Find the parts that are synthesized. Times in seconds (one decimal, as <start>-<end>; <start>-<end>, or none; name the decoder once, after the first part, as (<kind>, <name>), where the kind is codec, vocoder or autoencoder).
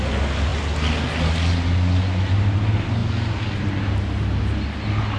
none